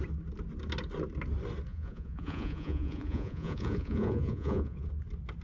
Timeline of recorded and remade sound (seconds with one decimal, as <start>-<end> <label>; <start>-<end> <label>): 0.0-1.7 recorded; 1.7-4.9 remade; 4.9-5.4 recorded